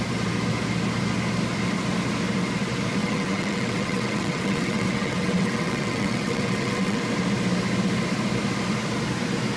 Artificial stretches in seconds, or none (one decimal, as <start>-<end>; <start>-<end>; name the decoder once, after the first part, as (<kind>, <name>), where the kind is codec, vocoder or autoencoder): 3.0-7.0 (vocoder, WaveNeXt)